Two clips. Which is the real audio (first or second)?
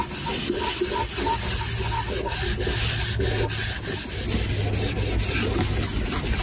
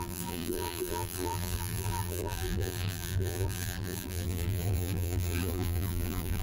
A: first